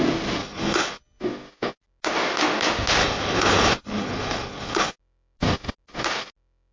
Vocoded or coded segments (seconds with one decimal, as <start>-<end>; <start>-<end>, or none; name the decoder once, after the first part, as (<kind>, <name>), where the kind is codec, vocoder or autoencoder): 0.4-1.2 (codec, HILCodec); 3.0-4.9